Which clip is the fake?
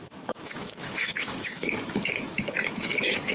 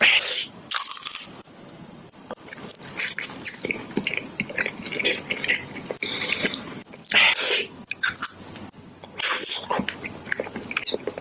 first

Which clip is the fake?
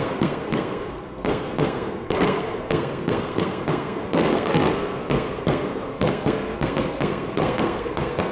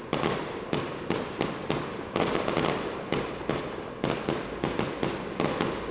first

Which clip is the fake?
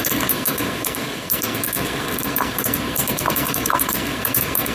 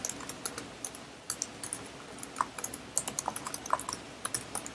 first